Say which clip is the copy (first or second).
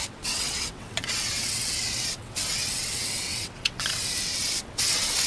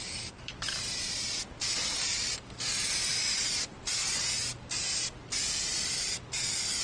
first